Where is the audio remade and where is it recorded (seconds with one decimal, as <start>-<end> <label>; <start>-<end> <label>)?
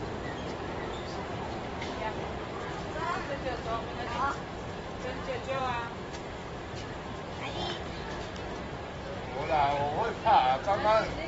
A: 0.0-1.3 recorded; 1.3-6.0 remade; 6.0-6.4 recorded; 6.4-10.4 remade; 10.4-11.3 recorded